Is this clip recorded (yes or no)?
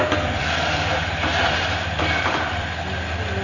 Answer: no